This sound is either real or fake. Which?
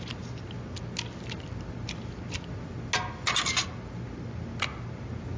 real